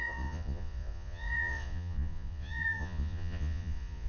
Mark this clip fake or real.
fake